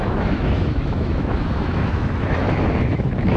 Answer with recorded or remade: remade